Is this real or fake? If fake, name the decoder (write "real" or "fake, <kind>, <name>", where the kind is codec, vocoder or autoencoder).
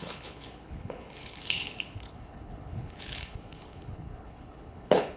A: fake, codec, HILCodec